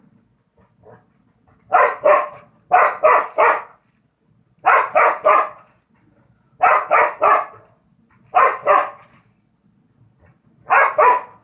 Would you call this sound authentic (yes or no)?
yes